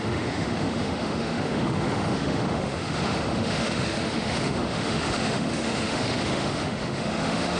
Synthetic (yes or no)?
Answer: yes